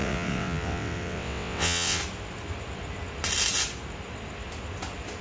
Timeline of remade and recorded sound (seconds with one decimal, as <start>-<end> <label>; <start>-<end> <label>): 0.0-2.0 remade; 2.0-5.2 recorded